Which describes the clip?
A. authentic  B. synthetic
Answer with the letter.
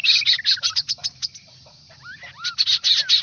A